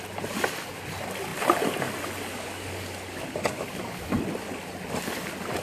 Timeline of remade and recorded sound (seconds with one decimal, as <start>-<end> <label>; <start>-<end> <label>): 0.0-2.3 recorded; 2.3-4.2 remade; 4.2-5.6 recorded